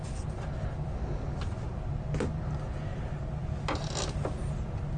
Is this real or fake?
real